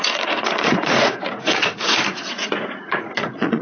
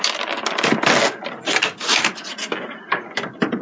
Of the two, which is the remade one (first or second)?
first